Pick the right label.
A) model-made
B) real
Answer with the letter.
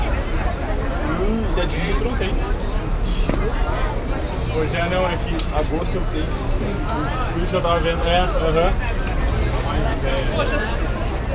B